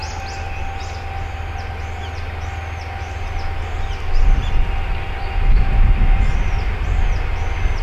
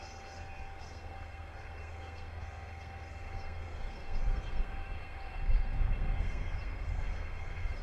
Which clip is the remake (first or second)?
second